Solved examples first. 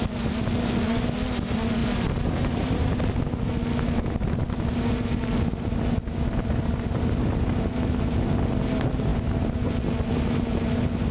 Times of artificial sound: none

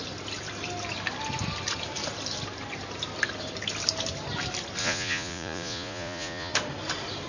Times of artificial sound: 4.8-6.5

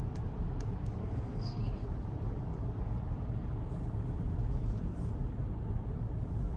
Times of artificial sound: 1.0-1.6

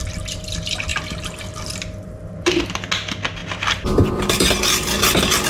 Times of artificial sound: 0.9-2.6